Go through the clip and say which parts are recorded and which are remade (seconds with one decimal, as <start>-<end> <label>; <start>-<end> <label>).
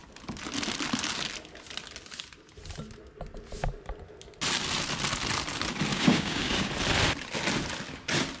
0.0-5.9 recorded; 5.9-6.7 remade; 6.7-8.4 recorded